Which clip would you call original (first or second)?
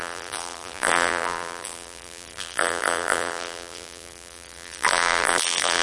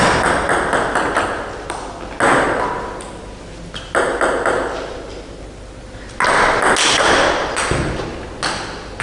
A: second